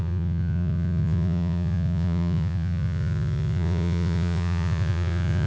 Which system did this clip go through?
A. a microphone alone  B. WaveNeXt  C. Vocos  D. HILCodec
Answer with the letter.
C